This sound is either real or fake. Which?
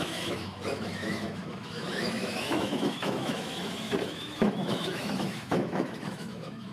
fake